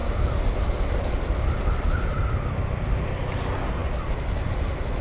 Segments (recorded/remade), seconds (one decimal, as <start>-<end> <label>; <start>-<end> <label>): 0.0-5.0 recorded